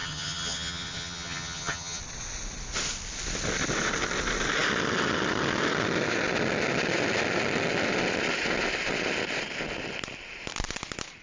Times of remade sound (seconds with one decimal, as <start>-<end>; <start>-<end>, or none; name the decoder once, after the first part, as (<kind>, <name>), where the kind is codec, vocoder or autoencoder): 0.0-2.0 (vocoder, HiFi-GAN)